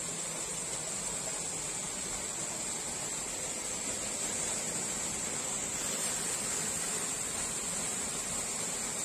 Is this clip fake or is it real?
real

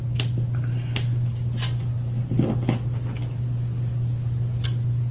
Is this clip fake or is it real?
real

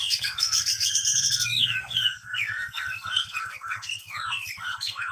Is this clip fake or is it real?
fake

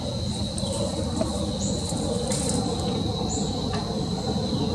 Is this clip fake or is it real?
real